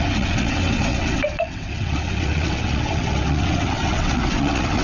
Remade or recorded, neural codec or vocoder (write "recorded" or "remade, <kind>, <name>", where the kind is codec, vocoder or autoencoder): remade, vocoder, WaveNeXt